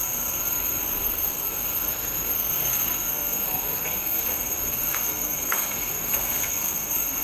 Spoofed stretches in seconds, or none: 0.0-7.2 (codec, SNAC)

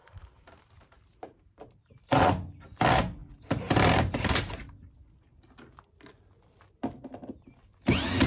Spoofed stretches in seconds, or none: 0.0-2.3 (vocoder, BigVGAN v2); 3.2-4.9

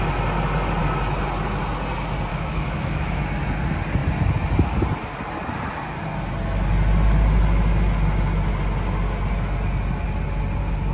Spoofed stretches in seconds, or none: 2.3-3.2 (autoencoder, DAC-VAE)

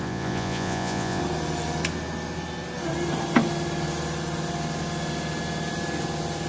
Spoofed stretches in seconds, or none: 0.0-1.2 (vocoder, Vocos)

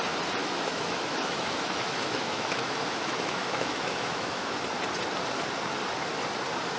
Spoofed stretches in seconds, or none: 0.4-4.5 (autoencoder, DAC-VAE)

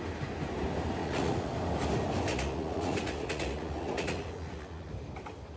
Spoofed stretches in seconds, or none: 1.0-1.5 (vocoder, Vocos); 2.3-4.9

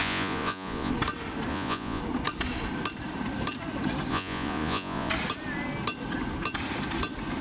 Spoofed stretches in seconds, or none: 0.0-0.9 (vocoder, Vocos); 1.5-2.0; 4.1-5.1